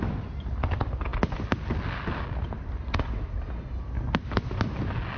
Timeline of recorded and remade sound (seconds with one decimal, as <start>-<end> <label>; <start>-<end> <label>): 0.0-5.2 recorded